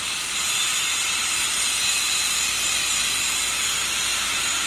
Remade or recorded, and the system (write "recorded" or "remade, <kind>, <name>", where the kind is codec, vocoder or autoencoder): recorded